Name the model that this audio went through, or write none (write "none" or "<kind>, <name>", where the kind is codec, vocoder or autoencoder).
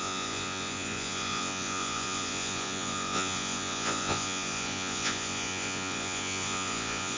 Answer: vocoder, Vocos